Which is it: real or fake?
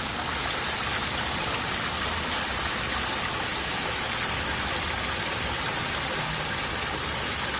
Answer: real